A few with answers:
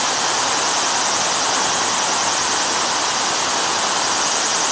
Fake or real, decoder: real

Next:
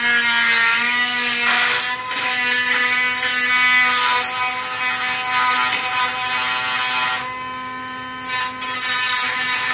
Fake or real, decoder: real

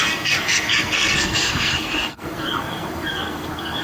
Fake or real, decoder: fake, codec, SNAC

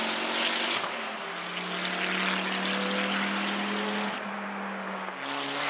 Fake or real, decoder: real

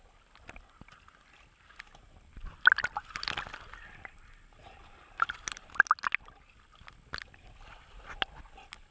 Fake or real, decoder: real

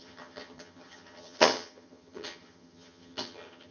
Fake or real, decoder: fake, vocoder, HiFi-GAN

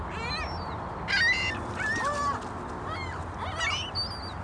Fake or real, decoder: real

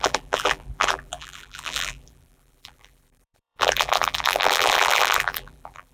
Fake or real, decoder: fake, vocoder, BigVGAN v2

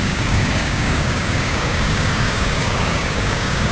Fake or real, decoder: fake, codec, DAC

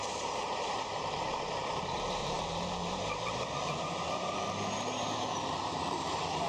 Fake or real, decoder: fake, vocoder, BigVGAN v2